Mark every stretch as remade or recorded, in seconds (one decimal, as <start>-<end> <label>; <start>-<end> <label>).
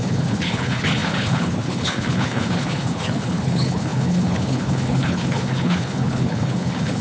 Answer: 0.0-7.0 remade